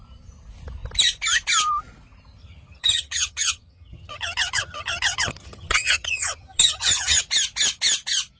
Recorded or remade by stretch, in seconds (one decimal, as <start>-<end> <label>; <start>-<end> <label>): 0.0-2.4 recorded; 2.4-7.2 remade; 7.2-8.4 recorded